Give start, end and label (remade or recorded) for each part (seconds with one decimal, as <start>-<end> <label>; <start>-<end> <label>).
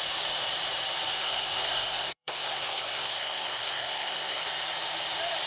0.0-1.1 recorded; 1.1-4.4 remade; 4.4-5.5 recorded